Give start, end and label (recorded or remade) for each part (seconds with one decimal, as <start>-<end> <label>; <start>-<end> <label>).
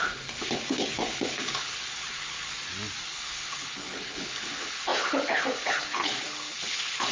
0.0-2.5 remade; 2.5-3.0 recorded; 3.0-7.1 remade